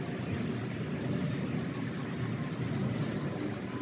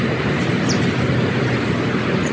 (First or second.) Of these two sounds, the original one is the first